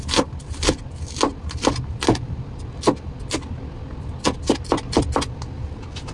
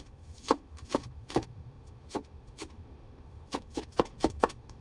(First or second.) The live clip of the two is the first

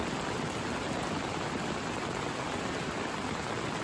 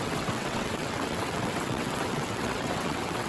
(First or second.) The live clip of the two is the first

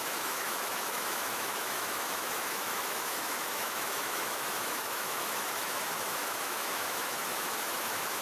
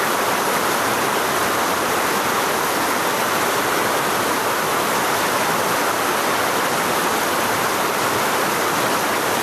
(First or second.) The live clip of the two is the second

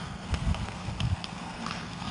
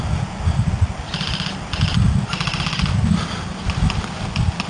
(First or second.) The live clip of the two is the second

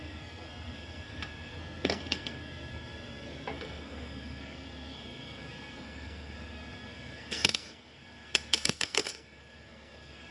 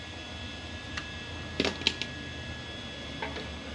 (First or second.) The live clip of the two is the second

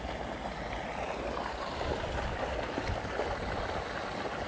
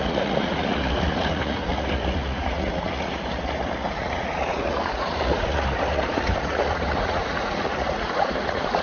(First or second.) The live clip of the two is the first